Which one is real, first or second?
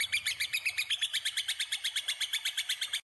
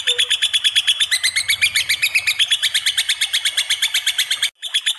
second